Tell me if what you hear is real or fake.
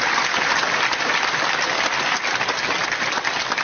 real